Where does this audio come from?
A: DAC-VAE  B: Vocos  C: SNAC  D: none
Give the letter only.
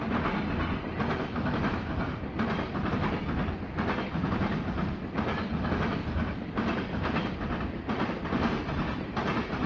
D